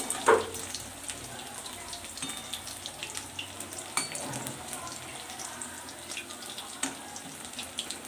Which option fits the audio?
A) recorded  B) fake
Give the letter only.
A